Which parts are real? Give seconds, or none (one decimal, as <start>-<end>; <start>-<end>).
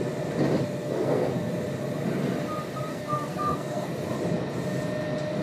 0.0-0.8; 1.5-2.9; 3.9-5.4